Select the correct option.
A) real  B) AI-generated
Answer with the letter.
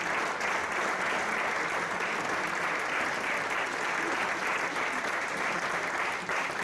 A